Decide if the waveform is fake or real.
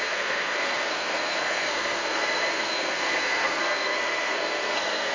fake